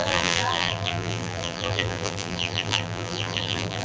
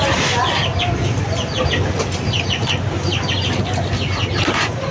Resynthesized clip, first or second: first